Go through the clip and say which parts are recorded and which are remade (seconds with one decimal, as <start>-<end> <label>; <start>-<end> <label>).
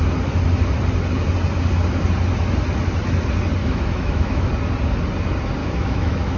0.0-3.6 recorded; 3.6-4.5 remade; 4.5-5.6 recorded; 5.6-6.4 remade